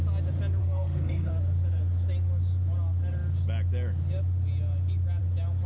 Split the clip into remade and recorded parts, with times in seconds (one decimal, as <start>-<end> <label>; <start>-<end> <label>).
0.0-0.6 recorded; 0.6-1.3 remade; 1.3-5.7 recorded